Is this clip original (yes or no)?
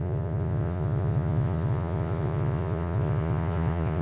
no